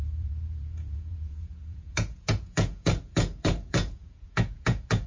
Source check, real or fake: fake